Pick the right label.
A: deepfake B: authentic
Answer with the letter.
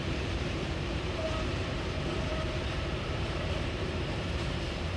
A